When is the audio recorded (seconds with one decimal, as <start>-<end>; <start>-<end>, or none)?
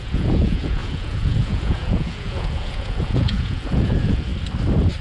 4.3-5.0